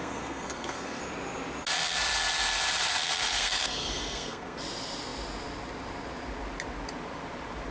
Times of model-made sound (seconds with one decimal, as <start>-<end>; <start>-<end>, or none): 0.0-1.0; 3.2-4.6